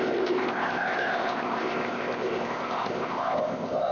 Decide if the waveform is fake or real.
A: fake